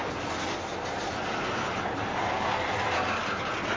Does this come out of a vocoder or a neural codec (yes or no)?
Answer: no